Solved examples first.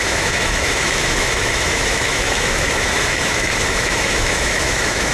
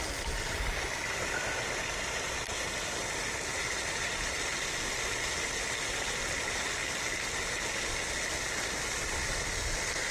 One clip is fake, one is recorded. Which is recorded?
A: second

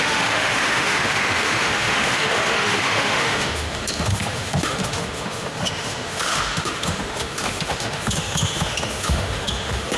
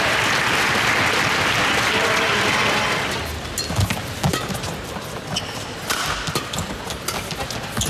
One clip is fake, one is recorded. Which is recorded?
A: second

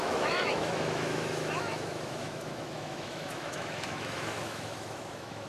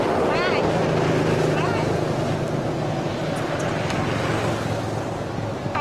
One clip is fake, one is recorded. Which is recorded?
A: second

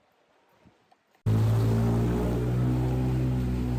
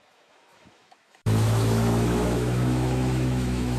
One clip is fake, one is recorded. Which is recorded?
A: first